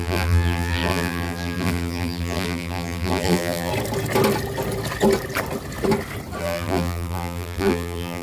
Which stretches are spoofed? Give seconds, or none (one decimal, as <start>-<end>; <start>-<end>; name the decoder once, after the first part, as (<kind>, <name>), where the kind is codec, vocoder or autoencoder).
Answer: 0.0-3.7 (vocoder, BigVGAN v2); 6.4-8.2